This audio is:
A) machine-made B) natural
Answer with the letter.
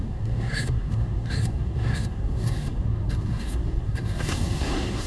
A